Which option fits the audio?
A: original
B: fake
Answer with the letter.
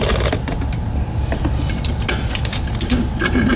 A